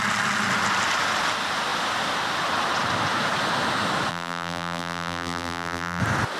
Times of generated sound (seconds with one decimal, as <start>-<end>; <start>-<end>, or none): 4.1-6.0